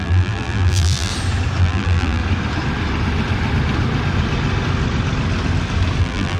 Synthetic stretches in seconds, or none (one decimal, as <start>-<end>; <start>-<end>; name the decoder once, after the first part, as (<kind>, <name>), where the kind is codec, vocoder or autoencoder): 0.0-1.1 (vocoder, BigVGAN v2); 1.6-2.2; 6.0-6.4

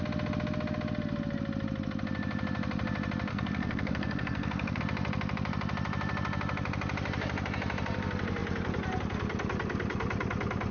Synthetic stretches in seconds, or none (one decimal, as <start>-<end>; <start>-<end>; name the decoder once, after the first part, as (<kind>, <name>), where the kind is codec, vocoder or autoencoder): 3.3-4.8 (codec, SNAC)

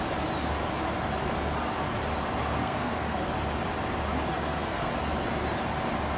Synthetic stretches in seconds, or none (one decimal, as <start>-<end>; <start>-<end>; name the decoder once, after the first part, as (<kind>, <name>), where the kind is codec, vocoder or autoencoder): 2.6-3.3 (codec, SNAC); 4.3-4.9